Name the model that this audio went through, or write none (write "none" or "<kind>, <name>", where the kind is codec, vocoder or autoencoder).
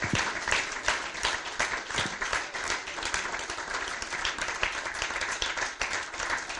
none